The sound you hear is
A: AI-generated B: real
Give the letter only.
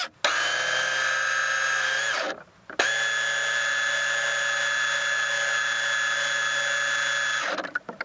B